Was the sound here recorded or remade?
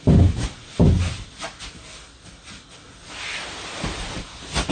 remade